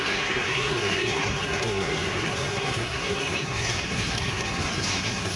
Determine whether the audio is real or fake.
fake